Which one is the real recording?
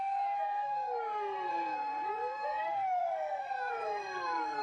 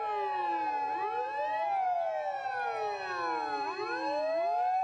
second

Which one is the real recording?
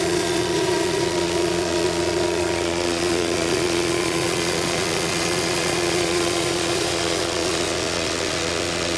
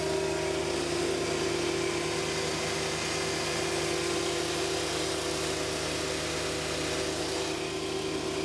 second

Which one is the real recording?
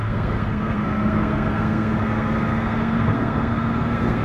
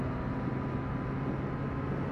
second